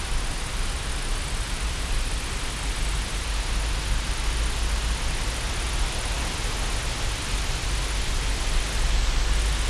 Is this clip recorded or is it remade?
recorded